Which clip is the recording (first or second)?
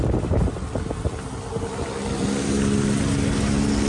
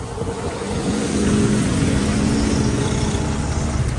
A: first